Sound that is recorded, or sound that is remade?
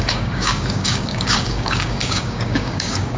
remade